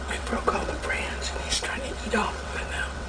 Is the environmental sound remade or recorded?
remade